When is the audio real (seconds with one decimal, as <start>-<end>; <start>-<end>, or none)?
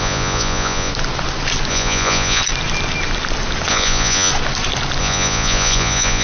0.9-1.7; 2.4-3.7; 4.3-5.0